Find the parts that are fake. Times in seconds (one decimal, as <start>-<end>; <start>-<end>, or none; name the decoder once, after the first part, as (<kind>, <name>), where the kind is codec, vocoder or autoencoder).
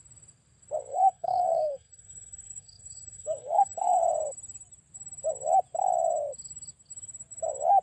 0.9-4.0 (codec, SNAC)